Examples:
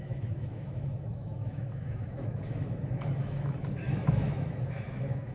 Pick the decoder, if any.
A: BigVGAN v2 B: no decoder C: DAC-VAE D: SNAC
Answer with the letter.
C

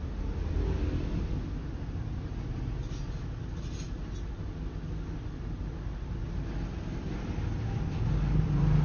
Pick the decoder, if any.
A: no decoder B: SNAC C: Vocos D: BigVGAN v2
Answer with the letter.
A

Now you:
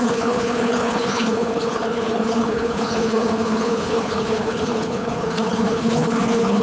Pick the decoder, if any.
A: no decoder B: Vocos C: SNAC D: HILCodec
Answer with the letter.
D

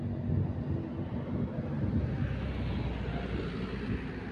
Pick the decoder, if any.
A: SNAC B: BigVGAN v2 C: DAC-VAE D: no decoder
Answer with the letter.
D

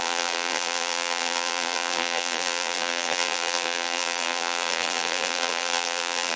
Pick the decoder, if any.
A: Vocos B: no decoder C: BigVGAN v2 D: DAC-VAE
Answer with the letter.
C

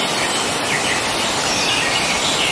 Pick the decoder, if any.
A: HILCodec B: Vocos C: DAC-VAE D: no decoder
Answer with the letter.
D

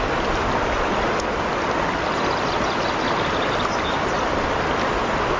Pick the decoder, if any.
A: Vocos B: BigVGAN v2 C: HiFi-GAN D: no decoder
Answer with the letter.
D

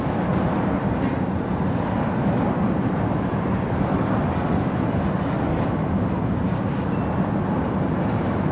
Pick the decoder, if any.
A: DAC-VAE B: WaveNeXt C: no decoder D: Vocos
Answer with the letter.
C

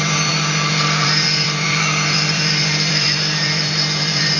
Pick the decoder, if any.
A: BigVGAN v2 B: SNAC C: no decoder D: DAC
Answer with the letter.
A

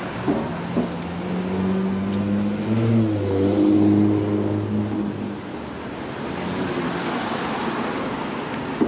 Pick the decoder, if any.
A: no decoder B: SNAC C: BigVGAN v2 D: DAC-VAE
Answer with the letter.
A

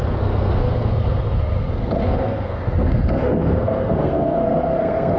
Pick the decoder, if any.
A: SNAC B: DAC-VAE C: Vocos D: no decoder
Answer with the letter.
A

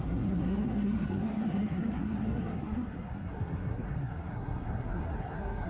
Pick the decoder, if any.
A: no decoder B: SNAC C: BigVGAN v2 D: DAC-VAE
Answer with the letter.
B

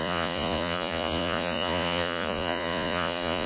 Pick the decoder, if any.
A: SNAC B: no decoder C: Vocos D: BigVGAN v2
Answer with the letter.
C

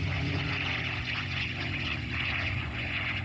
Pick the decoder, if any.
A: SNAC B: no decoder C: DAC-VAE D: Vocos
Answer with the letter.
D